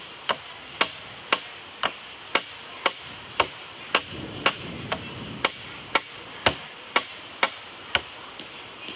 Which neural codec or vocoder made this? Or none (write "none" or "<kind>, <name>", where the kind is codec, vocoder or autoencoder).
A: none